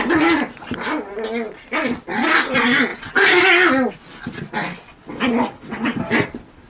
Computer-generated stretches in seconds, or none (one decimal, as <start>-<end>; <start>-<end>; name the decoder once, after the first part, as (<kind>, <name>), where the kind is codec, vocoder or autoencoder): 4.9-6.0 (vocoder, WaveNeXt)